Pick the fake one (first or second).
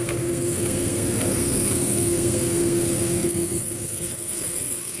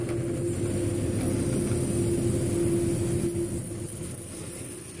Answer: first